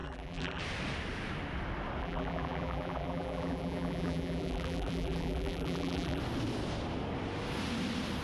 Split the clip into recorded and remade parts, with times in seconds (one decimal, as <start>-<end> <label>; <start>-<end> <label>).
0.0-0.6 remade; 0.6-2.0 recorded; 2.0-6.2 remade; 6.2-8.2 recorded